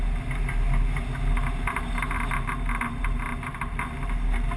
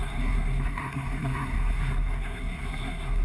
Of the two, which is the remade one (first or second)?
second